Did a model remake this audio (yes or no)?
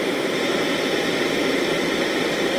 yes